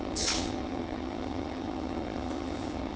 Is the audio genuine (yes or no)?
no